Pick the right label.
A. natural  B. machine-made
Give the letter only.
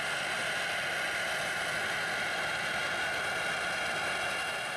A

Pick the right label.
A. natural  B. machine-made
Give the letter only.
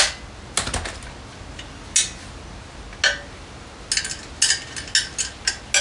A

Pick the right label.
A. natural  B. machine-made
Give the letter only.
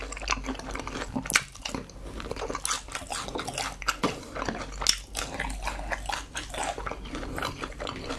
A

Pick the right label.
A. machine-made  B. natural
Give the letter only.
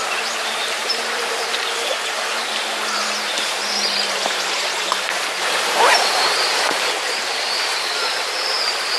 A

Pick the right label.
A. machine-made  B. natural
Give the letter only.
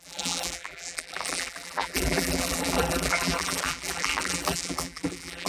A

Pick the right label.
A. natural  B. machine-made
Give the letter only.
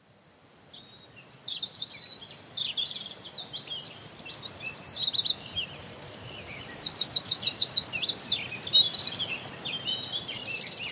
B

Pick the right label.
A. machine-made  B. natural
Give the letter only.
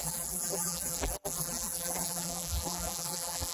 A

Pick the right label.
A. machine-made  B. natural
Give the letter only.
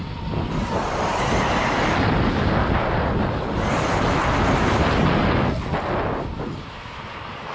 B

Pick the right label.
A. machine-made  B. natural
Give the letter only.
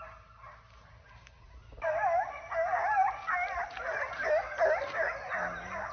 B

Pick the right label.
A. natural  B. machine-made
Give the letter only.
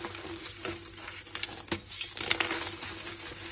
A